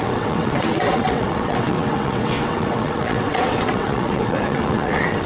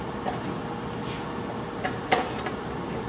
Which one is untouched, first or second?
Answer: second